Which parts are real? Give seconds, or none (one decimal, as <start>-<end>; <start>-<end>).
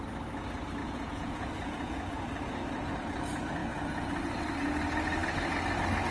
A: 0.0-0.8; 2.2-3.6; 4.2-6.1